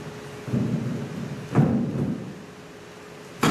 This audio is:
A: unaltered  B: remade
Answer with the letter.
A